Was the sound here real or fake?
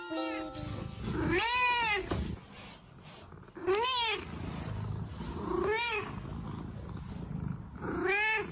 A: real